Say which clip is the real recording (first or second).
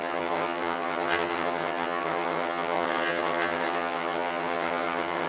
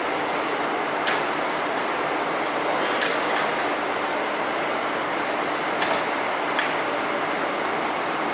second